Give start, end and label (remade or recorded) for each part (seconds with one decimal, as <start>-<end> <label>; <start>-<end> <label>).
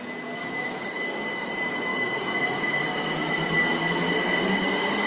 0.0-0.4 recorded; 0.4-1.5 remade; 1.5-1.9 recorded; 1.9-3.1 remade; 3.1-4.4 recorded; 4.4-5.1 remade